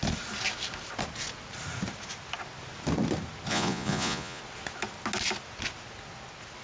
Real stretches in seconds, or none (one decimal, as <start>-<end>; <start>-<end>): 0.0-3.5; 4.4-6.6